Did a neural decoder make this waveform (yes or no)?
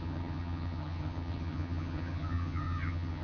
yes